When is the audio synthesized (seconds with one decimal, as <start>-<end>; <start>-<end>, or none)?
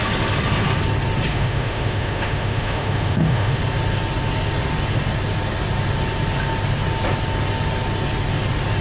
1.3-3.6